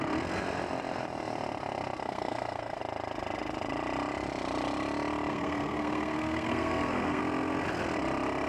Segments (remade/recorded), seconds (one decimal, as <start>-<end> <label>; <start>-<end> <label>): 0.0-2.0 recorded; 2.0-2.8 remade; 2.8-5.3 recorded; 5.3-7.2 remade; 7.2-8.5 recorded

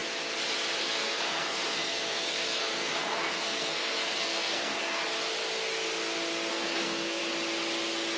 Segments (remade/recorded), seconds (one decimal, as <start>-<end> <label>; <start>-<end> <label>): 0.0-0.8 recorded; 0.8-5.0 remade; 5.0-6.5 recorded; 6.5-7.2 remade; 7.2-8.2 recorded

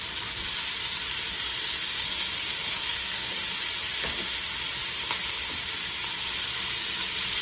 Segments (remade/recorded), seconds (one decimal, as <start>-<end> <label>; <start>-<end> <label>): 0.0-2.7 recorded; 2.7-3.3 remade; 3.3-7.4 recorded

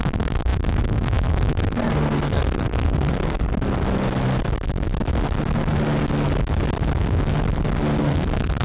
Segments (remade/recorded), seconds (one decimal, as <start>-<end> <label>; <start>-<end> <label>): 0.0-3.5 remade; 3.5-8.0 recorded; 8.0-8.6 remade

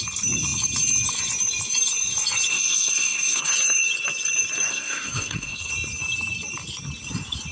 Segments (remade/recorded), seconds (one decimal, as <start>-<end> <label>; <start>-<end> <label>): 0.0-2.5 recorded; 2.5-3.5 remade; 3.5-4.7 recorded; 4.7-5.7 remade; 5.7-7.5 recorded

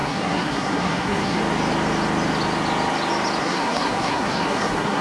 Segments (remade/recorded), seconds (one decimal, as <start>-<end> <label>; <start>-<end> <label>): 0.0-1.4 remade; 1.4-3.4 recorded; 3.4-5.0 remade

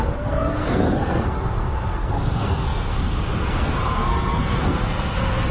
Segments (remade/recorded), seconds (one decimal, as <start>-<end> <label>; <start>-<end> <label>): 0.0-5.5 remade